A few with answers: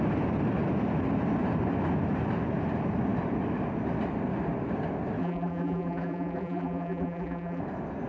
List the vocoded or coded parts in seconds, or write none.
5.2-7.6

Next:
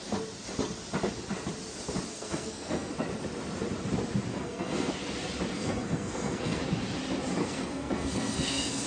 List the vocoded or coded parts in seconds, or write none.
2.1-2.9; 4.3-4.9; 5.5-6.6; 7.4-8.9

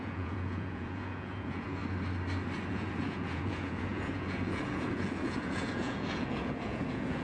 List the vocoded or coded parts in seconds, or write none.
0.0-1.8; 2.7-7.2

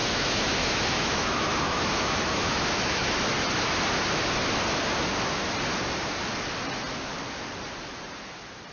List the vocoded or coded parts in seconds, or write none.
0.0-3.1